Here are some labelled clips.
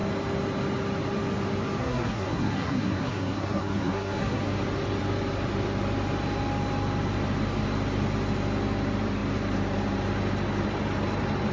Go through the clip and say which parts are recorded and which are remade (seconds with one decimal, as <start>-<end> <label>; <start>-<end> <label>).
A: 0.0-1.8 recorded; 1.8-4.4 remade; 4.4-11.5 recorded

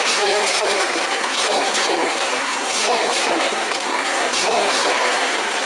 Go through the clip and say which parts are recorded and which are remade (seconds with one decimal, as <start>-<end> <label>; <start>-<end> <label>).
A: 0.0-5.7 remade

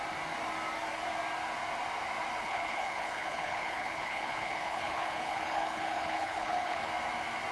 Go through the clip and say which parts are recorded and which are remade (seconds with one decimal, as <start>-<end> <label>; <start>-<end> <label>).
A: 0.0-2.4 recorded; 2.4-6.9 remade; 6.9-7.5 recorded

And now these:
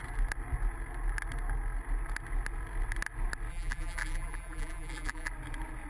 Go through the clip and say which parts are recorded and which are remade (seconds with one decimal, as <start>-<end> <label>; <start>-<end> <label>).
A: 0.0-3.5 recorded; 3.5-5.3 remade; 5.3-5.9 recorded